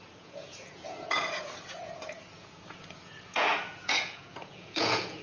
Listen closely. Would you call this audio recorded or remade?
remade